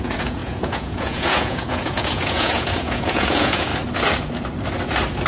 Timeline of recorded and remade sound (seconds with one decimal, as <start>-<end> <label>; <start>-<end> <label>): 0.0-3.7 remade; 3.7-5.3 recorded